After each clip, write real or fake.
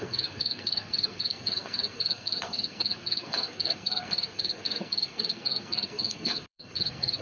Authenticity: fake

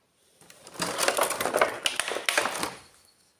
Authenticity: real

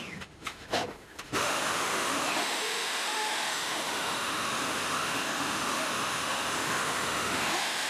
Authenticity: fake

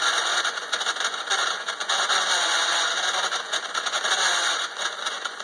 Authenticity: fake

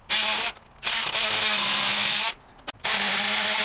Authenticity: real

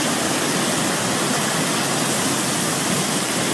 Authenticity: real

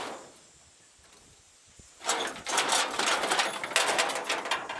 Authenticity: real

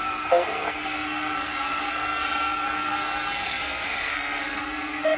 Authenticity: fake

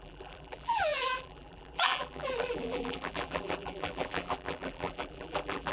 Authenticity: fake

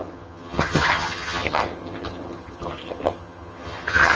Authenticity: fake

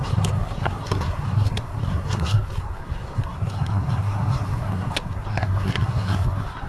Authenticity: fake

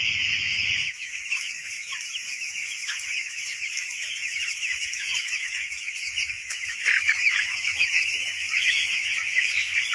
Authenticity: fake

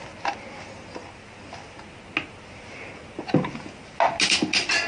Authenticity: real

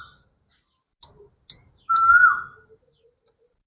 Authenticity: real